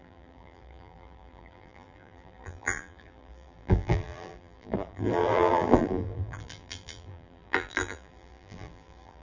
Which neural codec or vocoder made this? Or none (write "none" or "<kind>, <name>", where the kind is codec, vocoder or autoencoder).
vocoder, BigVGAN v2